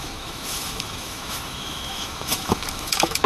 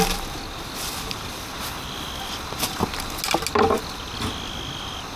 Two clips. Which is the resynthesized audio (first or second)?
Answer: first